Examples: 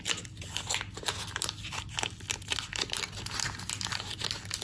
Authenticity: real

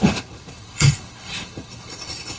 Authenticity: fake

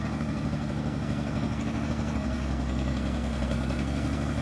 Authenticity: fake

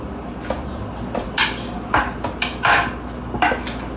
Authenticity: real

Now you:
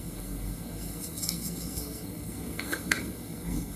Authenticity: fake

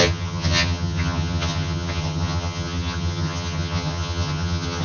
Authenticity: fake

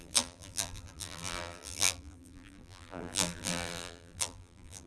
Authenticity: fake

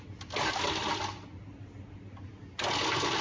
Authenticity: real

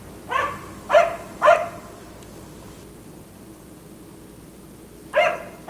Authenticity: real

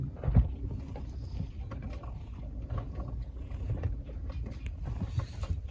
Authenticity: real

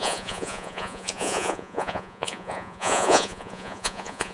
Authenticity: fake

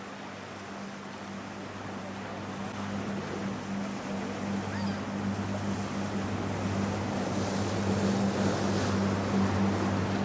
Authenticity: real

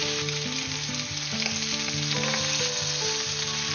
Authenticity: real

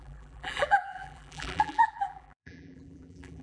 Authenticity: fake